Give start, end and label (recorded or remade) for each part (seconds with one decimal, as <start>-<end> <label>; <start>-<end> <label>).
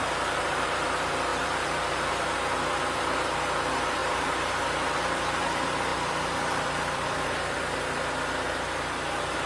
0.0-1.3 recorded; 1.3-2.1 remade; 2.1-5.9 recorded; 5.9-8.0 remade; 8.0-9.5 recorded